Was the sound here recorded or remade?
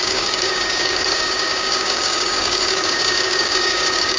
remade